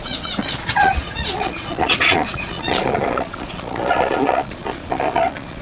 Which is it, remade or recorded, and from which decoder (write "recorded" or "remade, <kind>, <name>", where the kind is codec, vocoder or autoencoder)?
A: remade, vocoder, Vocos